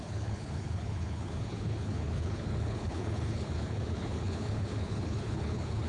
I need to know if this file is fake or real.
fake